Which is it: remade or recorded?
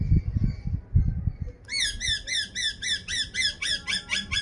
recorded